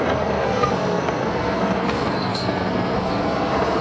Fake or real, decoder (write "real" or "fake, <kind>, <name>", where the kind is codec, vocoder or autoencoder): fake, codec, SNAC